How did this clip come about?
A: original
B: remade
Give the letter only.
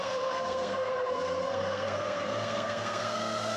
B